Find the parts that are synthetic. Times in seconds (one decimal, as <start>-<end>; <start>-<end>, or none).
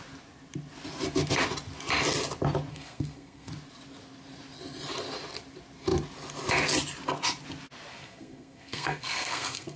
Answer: 2.7-3.5; 7.9-9.8